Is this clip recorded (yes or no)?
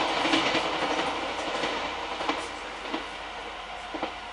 yes